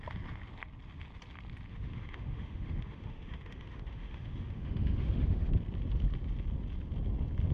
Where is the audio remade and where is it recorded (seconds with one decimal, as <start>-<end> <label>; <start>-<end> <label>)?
0.0-1.7 recorded; 1.7-5.5 remade; 5.5-7.5 recorded